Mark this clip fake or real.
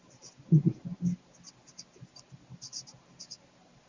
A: real